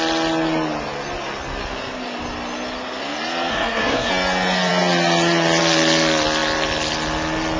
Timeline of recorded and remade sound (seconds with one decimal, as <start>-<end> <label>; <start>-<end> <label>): 0.0-3.5 recorded; 3.5-4.1 remade; 4.1-7.6 recorded